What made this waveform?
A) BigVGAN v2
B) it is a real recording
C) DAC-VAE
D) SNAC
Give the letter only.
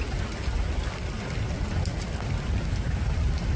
B